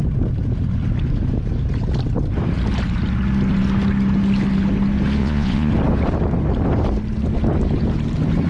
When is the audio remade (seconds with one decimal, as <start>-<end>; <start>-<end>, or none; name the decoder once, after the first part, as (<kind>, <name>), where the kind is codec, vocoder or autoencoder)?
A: 5.2-5.7 (vocoder, Vocos)